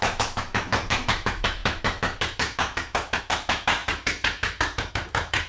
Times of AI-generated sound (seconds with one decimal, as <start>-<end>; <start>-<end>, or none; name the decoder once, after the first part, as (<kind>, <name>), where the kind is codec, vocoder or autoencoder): 0.0-5.5 (autoencoder, DAC-VAE)